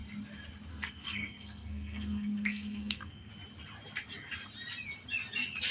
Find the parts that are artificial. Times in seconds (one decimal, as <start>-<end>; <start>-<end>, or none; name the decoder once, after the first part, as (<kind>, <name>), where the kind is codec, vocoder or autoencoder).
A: 0.7-3.3 (codec, SNAC)